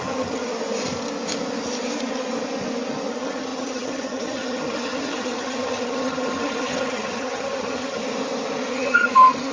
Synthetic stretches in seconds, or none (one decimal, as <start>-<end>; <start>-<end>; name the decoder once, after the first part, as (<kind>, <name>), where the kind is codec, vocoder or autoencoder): 0.0-0.5 (vocoder, HiFi-GAN); 3.1-8.0; 8.7-9.5